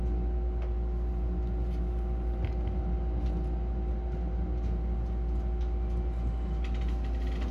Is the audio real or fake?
real